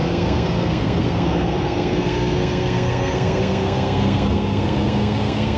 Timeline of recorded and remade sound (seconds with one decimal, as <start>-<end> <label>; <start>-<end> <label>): 0.0-5.6 remade